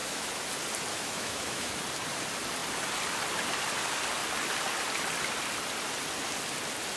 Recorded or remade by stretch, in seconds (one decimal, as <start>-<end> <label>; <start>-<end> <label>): 0.0-0.5 remade; 0.5-0.9 recorded; 0.9-1.7 remade; 1.7-7.0 recorded